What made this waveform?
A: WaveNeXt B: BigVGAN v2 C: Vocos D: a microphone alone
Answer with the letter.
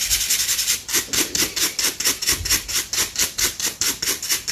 D